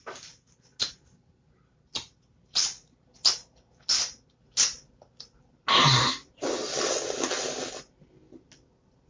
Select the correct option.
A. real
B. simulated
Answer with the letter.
A